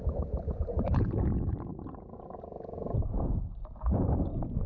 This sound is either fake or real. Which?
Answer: fake